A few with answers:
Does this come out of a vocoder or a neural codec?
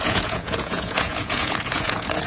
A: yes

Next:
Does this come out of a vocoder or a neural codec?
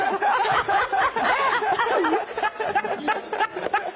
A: no